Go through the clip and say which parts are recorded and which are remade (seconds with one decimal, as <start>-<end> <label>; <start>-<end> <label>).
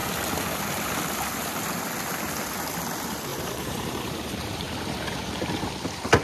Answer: 0.0-3.3 recorded; 3.3-5.7 remade; 5.7-6.2 recorded